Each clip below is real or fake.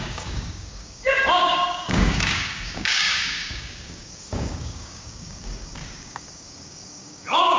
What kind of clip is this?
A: fake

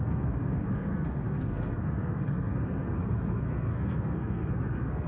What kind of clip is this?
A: fake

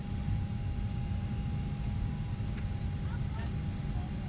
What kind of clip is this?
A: real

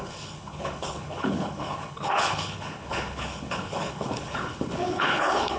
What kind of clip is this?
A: fake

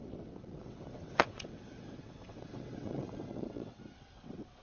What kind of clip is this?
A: fake